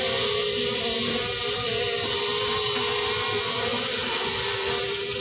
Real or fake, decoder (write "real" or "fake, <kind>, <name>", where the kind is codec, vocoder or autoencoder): real